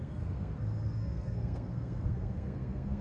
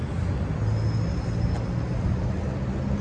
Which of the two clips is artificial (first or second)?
first